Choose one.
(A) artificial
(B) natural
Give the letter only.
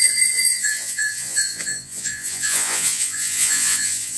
A